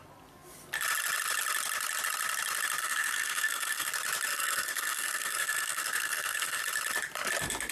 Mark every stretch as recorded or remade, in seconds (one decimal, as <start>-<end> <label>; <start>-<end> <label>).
0.0-2.8 recorded; 2.8-3.9 remade; 3.9-4.3 recorded; 4.3-6.6 remade; 6.6-7.7 recorded